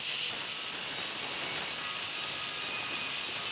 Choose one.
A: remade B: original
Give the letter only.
B